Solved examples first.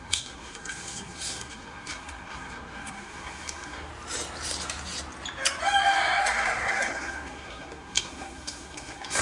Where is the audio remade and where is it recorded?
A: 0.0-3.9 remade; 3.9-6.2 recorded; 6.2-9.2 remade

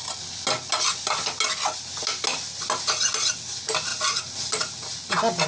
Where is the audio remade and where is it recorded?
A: 0.0-5.5 recorded

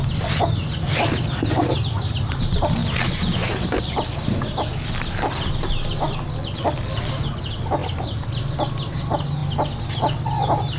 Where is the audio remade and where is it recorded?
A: 0.0-10.8 recorded